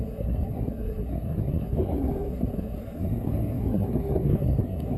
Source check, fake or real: fake